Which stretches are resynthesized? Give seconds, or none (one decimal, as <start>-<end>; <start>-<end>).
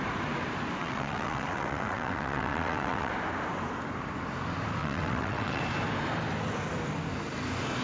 0.8-3.1; 4.8-5.6